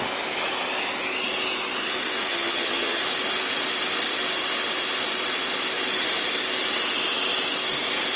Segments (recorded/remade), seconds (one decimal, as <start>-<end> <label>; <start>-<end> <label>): 0.0-2.3 recorded; 2.3-3.0 remade; 3.0-8.2 recorded